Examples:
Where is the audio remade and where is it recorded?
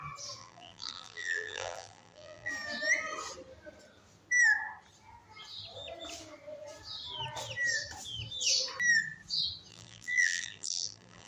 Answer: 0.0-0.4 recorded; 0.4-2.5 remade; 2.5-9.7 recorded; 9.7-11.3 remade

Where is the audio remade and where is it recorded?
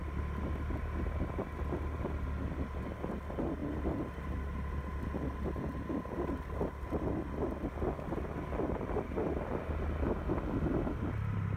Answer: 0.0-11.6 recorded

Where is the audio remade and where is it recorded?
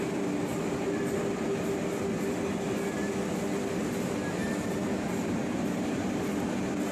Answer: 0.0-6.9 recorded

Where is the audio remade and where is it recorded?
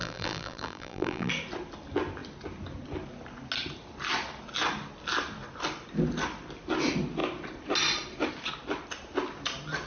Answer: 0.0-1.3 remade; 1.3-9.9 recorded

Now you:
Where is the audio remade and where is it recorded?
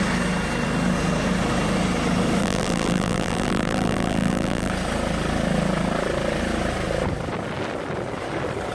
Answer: 0.0-2.4 recorded; 2.4-4.7 remade; 4.7-8.7 recorded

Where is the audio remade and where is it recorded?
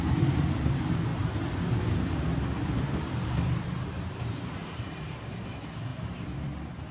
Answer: 0.0-1.1 remade; 1.1-2.0 recorded; 2.0-6.9 remade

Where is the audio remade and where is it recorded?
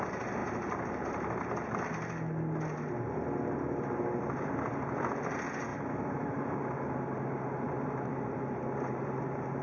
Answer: 0.0-0.4 recorded; 0.4-1.4 remade; 1.4-5.7 recorded; 5.7-9.6 remade